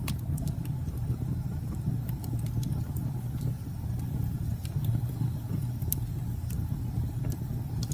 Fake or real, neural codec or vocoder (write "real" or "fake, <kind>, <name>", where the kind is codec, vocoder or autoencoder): real